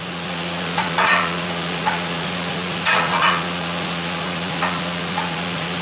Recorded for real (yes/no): no